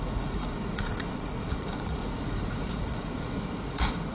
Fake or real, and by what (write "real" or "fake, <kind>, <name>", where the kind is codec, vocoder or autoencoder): fake, vocoder, Vocos